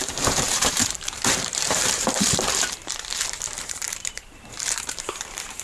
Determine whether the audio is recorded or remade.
remade